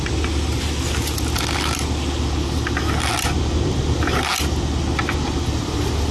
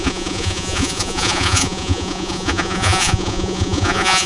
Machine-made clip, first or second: second